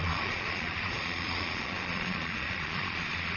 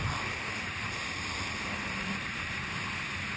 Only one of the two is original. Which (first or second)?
second